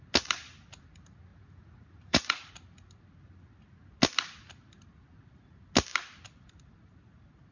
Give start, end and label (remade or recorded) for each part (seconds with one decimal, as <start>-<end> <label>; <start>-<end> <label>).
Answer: 0.0-1.3 recorded; 1.3-2.5 remade; 2.5-7.5 recorded